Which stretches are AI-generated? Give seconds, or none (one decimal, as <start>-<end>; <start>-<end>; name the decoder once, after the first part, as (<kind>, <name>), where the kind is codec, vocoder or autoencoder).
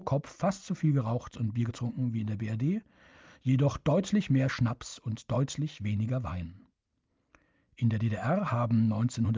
none